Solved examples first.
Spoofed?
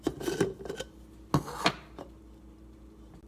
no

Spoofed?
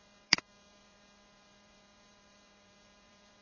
yes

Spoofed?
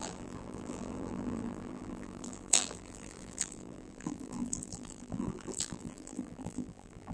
yes